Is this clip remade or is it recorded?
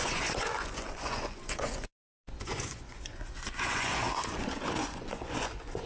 remade